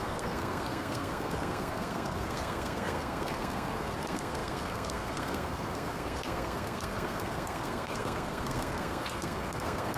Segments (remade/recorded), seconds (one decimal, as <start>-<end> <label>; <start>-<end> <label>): 0.0-10.0 remade

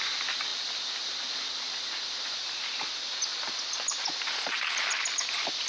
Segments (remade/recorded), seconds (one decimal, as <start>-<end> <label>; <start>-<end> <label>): 0.0-5.7 recorded

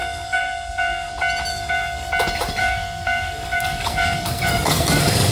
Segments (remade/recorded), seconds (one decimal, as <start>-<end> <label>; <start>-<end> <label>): 0.0-1.1 remade; 1.1-1.5 recorded; 1.5-2.1 remade; 2.1-2.6 recorded; 2.6-5.3 remade